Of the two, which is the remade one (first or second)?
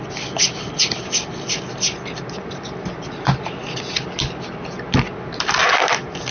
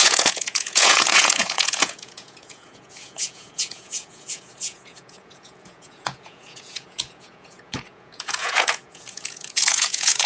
second